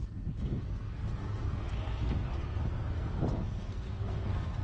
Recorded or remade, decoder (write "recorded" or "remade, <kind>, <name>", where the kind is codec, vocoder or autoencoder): remade, codec, SNAC